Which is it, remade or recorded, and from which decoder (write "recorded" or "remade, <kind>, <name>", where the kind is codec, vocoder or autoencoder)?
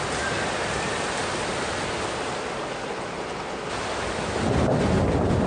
recorded